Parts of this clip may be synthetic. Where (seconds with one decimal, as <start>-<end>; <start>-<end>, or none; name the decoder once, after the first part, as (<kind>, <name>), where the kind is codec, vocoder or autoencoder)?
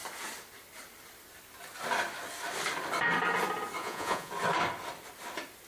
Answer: 3.8-4.3 (vocoder, Vocos)